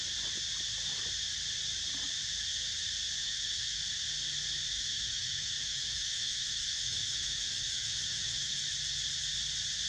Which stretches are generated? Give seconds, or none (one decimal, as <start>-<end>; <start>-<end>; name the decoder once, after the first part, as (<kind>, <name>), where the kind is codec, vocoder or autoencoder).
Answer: 3.2-3.8 (autoencoder, DAC-VAE); 4.7-8.6